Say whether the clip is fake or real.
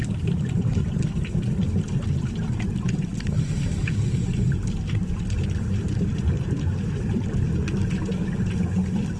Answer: real